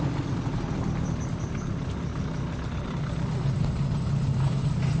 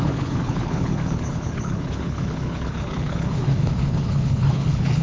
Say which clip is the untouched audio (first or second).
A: first